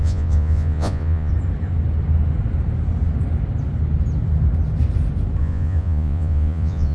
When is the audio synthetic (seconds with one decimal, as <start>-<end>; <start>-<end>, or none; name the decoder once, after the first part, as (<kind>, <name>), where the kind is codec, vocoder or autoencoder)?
0.0-1.3 (vocoder, Vocos); 5.4-6.9